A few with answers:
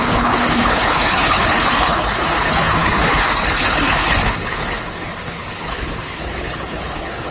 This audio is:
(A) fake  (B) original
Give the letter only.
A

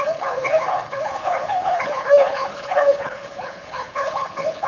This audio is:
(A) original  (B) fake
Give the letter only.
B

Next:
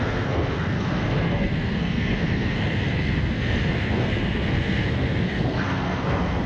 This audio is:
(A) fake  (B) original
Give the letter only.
A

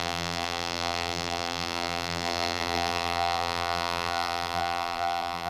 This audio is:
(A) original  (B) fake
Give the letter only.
B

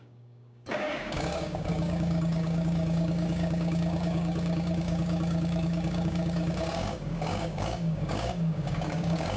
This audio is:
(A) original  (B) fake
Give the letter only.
B